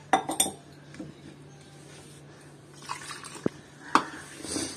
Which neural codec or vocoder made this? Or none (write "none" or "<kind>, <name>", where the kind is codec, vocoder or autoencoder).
none